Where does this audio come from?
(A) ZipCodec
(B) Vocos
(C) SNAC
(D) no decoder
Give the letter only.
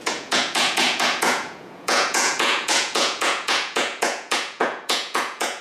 B